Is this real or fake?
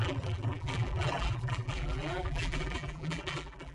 fake